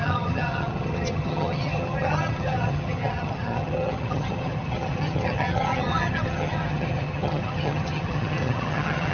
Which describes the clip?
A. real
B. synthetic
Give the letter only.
B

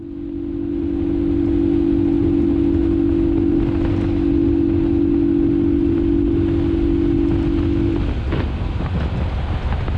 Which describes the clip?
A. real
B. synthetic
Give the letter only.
A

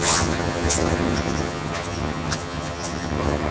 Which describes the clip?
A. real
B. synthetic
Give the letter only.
B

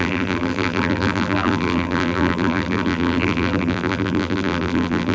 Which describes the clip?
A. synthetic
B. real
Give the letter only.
A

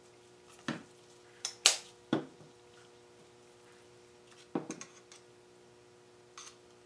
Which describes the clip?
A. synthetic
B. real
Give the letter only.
B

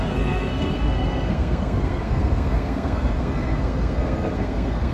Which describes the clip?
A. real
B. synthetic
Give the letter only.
B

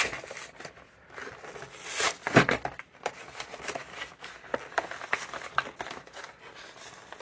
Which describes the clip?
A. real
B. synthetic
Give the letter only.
A